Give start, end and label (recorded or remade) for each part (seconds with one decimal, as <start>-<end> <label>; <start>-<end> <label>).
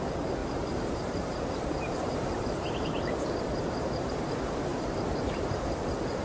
0.0-0.4 recorded; 0.4-4.1 remade; 4.1-4.7 recorded; 4.7-5.5 remade; 5.5-6.2 recorded